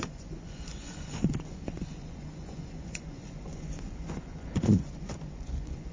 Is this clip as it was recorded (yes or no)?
no